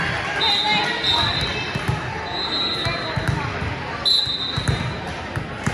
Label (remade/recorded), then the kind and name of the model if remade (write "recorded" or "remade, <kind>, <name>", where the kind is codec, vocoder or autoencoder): recorded